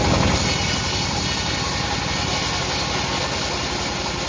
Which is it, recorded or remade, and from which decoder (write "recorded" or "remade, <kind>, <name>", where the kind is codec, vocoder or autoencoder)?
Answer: recorded